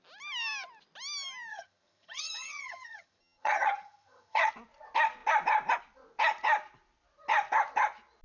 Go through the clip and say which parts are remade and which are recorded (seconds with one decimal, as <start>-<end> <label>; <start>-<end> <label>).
0.0-1.5 recorded; 1.5-4.5 remade; 4.5-8.2 recorded

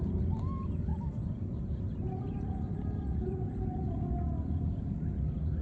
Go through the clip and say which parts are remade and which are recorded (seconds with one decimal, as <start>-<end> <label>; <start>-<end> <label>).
0.0-5.6 recorded

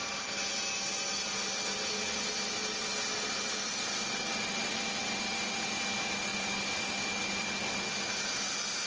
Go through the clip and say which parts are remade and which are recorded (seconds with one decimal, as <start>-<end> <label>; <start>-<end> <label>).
0.0-8.9 recorded

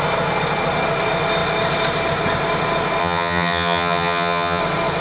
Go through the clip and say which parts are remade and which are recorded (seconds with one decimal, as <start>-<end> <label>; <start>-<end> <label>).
0.0-3.0 recorded; 3.0-4.6 remade; 4.6-5.0 recorded

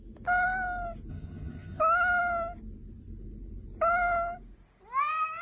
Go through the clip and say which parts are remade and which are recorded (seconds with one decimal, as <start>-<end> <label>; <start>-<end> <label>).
0.0-1.1 recorded; 1.1-1.8 remade; 1.8-5.4 recorded

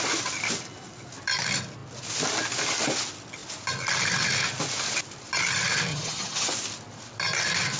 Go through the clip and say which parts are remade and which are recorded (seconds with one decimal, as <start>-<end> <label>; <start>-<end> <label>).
0.0-5.9 recorded; 5.9-6.5 remade; 6.5-7.8 recorded